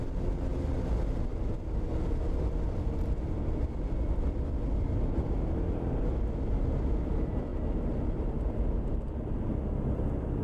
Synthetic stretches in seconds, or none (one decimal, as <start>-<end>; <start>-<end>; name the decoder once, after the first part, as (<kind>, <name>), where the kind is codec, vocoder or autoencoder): none